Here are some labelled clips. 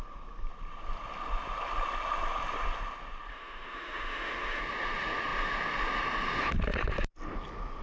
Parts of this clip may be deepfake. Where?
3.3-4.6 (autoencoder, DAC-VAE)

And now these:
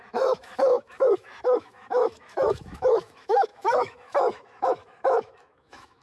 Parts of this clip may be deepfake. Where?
0.0-6.0 (autoencoder, DAC-VAE)

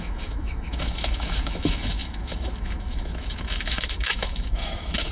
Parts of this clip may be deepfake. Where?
0.0-5.1 (autoencoder, DAC-VAE)

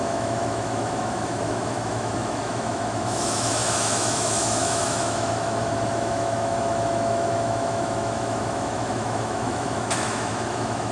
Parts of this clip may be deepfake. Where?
0.0-10.9 (autoencoder, DAC-VAE)

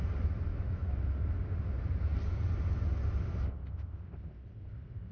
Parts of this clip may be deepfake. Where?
0.5-1.0 (autoencoder, DAC-VAE)

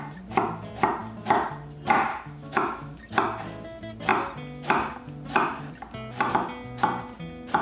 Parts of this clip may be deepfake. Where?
2.1-3.0 (autoencoder, DAC-VAE)

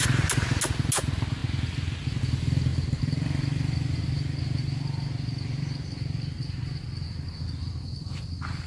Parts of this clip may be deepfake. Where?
none

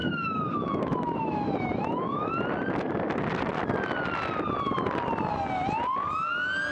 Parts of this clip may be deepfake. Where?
0.0-2.3 (autoencoder, DAC-VAE)